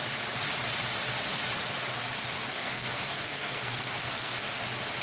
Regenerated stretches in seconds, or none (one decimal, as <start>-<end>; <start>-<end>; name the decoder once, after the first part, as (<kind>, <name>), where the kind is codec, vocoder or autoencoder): 2.5-4.5 (codec, SNAC)